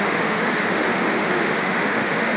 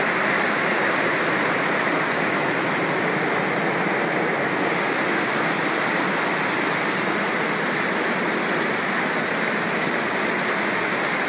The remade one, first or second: first